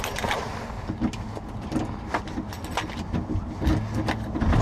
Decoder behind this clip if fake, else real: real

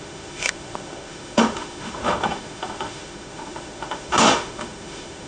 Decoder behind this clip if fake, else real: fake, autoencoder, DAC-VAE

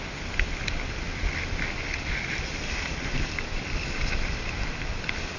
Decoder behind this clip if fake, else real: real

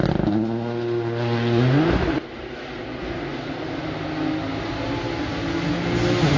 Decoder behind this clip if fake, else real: real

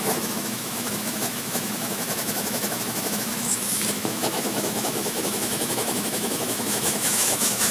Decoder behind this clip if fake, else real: fake, autoencoder, DAC-VAE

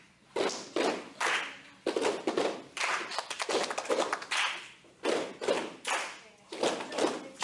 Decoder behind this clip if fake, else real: real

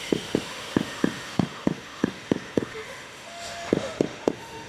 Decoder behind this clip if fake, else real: fake, autoencoder, DAC-VAE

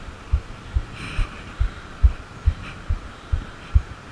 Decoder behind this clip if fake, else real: real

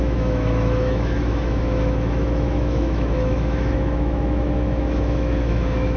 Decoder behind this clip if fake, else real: fake, autoencoder, DAC-VAE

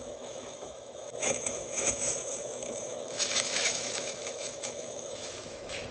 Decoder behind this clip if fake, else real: fake, autoencoder, DAC-VAE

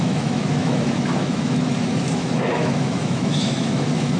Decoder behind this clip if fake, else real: fake, autoencoder, DAC-VAE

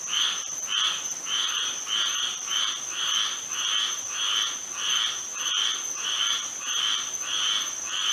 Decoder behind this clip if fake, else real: real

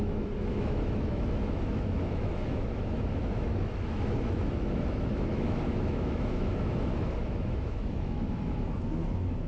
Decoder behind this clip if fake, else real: fake, autoencoder, DAC-VAE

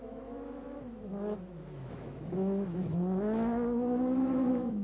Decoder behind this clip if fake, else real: fake, autoencoder, DAC-VAE